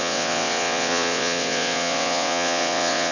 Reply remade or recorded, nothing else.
remade